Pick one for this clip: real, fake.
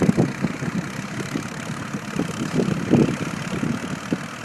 real